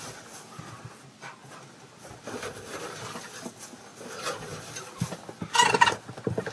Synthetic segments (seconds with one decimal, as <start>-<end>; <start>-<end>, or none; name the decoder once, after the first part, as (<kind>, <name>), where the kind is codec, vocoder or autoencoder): none